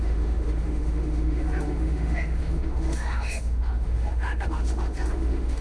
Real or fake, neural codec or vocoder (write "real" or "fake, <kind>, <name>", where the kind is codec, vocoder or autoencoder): fake, autoencoder, DAC-VAE